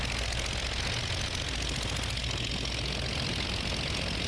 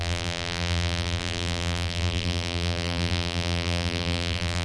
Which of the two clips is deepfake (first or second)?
second